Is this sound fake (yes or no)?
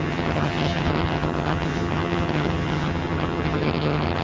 yes